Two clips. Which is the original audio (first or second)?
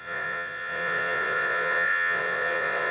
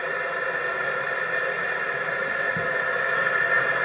second